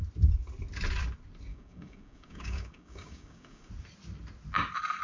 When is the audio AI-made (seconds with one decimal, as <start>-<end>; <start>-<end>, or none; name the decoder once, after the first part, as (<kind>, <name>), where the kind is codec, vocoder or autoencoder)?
1.5-3.7 (codec, DAC)